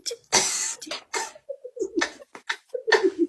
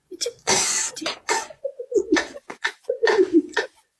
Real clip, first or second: first